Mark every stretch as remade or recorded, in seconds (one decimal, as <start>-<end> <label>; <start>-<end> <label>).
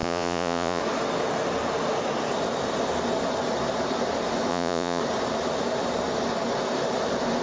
0.0-0.8 remade; 0.8-4.5 recorded; 4.5-5.0 remade; 5.0-7.4 recorded